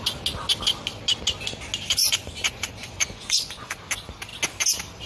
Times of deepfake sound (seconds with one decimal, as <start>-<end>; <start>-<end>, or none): 2.0-3.8